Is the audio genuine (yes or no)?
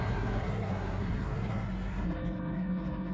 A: no